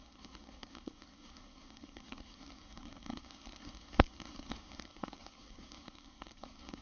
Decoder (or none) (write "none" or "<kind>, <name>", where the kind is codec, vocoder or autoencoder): codec, SNAC